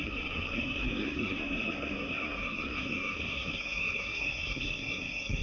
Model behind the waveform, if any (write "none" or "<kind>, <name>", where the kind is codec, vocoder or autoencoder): codec, SNAC